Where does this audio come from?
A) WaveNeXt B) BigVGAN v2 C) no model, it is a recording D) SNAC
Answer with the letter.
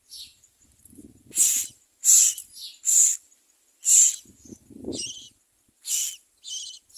C